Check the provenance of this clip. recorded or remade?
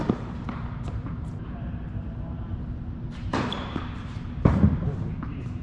remade